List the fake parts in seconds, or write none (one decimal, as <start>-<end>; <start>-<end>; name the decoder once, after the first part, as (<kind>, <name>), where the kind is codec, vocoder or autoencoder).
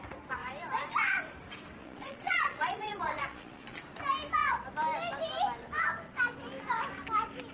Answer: 1.8-3.8 (vocoder, Vocos)